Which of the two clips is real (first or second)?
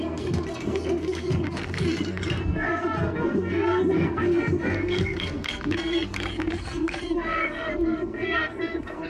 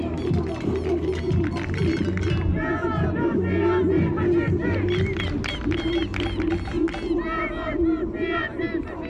second